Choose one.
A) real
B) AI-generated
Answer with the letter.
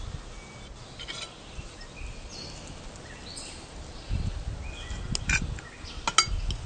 A